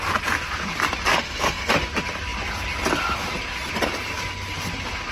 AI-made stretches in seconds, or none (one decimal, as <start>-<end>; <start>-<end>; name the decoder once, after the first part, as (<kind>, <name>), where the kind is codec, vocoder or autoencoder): 1.1-1.7 (codec, SNAC)